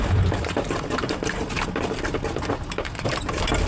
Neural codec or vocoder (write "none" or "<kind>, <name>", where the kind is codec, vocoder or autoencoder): none